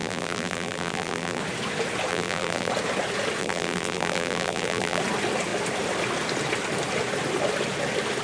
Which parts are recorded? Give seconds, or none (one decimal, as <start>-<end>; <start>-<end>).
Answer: 1.4-2.1; 2.7-3.4; 5.0-8.2